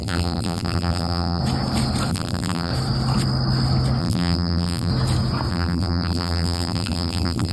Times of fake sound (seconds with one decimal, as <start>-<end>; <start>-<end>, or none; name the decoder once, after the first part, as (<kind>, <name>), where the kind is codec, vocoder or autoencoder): 0.0-1.4 (vocoder, BigVGAN v2); 2.1-2.7; 4.0-4.9; 5.5-7.5